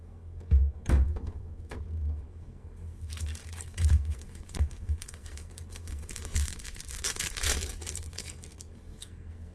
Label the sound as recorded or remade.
remade